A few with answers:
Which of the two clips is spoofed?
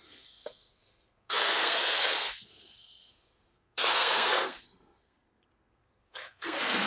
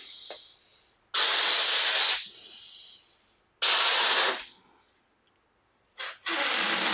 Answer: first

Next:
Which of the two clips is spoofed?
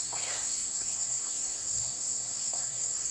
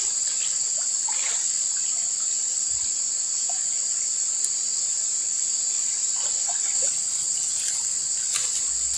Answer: first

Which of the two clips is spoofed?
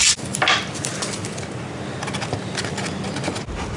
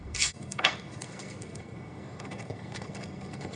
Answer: second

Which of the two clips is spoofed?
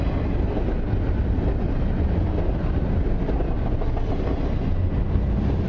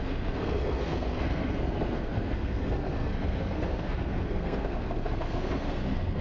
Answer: second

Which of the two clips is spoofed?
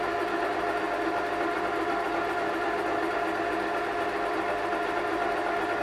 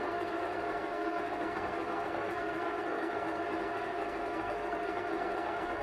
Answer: second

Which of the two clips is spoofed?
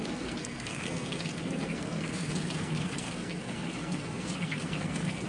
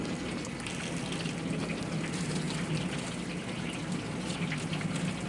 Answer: first